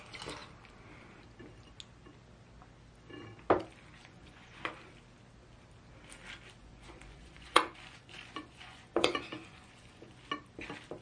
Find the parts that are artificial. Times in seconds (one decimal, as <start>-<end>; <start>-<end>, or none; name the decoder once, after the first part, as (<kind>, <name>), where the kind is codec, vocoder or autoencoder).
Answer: 4.0-4.7 (vocoder, Vocos); 6.6-10.2